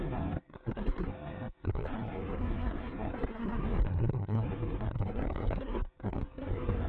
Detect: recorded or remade remade